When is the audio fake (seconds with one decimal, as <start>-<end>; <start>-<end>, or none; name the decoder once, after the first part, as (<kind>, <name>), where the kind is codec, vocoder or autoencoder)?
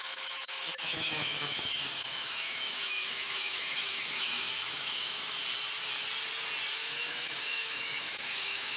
0.0-5.4 (autoencoder, DAC-VAE); 6.7-8.8